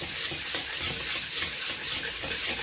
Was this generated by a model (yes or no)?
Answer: no